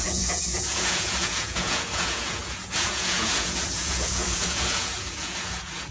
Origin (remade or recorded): remade